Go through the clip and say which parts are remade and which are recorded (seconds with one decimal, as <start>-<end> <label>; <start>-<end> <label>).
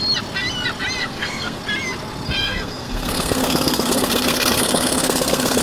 0.0-1.0 recorded; 1.0-1.6 remade; 1.6-2.4 recorded; 2.4-5.6 remade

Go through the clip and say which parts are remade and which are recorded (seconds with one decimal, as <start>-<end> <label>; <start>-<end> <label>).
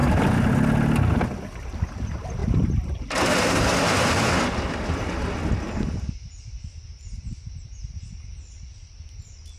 0.0-0.5 remade; 0.5-2.4 recorded; 2.4-3.6 remade; 3.6-6.9 recorded; 6.9-7.9 remade; 7.9-9.6 recorded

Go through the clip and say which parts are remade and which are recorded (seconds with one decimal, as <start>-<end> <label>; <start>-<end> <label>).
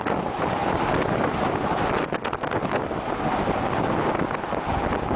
0.0-5.2 recorded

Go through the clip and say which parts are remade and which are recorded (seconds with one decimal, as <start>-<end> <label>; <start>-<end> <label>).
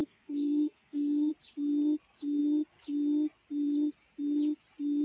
0.0-1.3 remade; 1.3-5.0 recorded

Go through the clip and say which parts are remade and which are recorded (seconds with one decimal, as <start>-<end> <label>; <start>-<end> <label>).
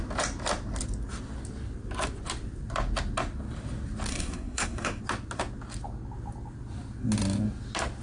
0.0-4.1 recorded; 4.1-5.0 remade; 5.0-8.0 recorded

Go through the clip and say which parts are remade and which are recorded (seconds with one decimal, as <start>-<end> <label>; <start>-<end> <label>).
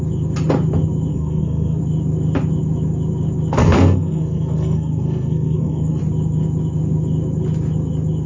0.0-1.1 recorded; 1.1-1.8 remade; 1.8-3.6 recorded; 3.6-6.0 remade; 6.0-8.3 recorded